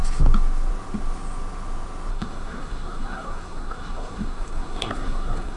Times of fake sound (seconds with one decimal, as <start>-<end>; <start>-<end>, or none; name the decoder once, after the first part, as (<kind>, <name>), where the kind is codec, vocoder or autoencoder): 2.1-5.6 (codec, SNAC)